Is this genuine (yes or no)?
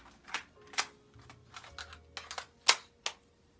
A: yes